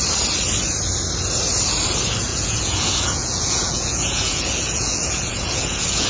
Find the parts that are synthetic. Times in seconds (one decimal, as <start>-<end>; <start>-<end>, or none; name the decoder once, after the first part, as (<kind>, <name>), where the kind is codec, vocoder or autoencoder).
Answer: 2.3-6.1 (vocoder, Vocos)